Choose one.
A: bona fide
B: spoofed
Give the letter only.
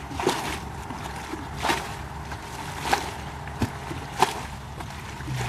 A